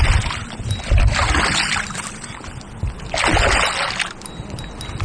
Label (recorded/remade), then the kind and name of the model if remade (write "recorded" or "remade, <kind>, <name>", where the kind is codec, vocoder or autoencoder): recorded